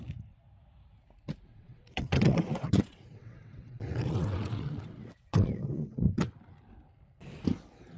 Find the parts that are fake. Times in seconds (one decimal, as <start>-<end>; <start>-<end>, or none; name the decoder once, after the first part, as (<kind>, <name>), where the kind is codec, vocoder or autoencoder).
1.5-6.3 (vocoder, WaveNeXt)